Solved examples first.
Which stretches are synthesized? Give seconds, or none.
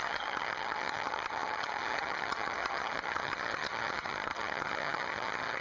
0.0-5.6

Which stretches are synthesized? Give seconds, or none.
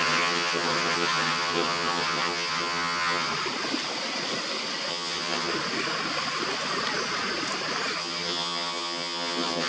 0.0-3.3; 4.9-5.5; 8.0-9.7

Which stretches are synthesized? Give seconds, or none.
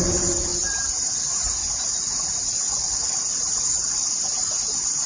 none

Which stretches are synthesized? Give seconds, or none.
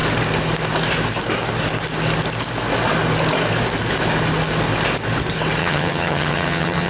5.6-6.9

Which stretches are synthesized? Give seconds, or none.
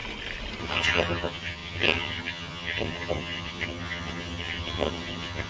0.6-5.5